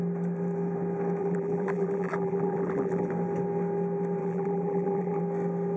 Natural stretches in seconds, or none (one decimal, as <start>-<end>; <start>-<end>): 0.0-1.2; 3.1-4.2; 5.2-5.8